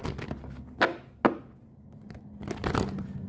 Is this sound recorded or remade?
recorded